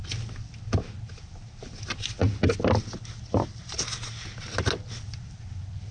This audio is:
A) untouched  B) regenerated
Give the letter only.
A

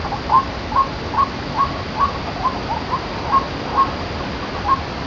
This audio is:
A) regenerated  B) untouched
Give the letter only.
B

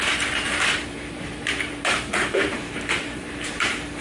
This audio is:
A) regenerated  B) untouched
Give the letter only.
A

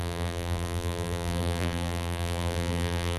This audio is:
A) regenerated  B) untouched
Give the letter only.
A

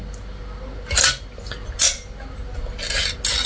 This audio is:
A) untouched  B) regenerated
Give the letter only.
A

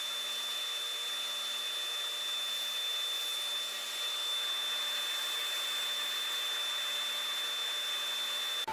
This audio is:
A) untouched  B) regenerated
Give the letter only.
A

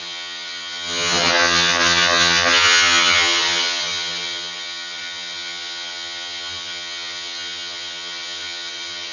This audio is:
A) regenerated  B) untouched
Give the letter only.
A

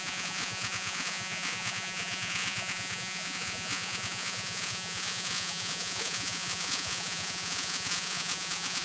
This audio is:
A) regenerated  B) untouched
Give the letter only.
A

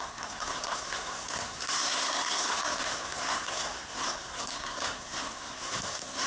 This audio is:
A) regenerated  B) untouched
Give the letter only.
A